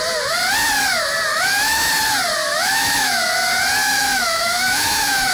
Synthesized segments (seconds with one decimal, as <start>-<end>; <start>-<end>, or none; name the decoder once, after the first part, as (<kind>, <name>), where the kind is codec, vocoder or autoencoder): 1.3-1.9 (autoencoder, DAC-VAE); 2.4-3.3; 3.8-5.3